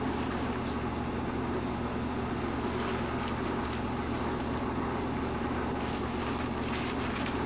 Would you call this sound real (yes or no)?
yes